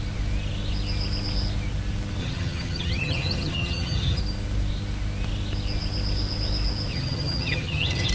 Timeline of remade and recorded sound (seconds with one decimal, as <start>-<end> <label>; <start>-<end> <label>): 0.0-2.2 recorded; 2.2-4.2 remade; 4.2-6.9 recorded; 6.9-8.1 remade